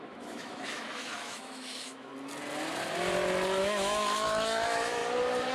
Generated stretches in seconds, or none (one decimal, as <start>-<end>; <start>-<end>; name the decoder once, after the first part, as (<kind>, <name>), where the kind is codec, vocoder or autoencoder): 0.0-2.1 (autoencoder, DAC-VAE); 3.6-5.0